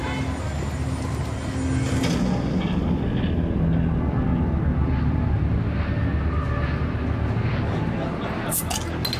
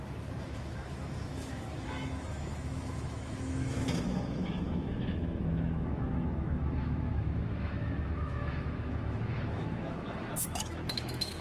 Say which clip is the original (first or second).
first